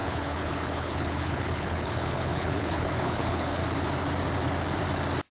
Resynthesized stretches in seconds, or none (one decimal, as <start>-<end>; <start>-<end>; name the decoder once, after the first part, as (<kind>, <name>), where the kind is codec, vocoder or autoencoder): 0.0-3.6 (codec, HILCodec)